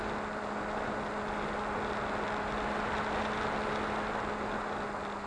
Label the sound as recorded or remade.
recorded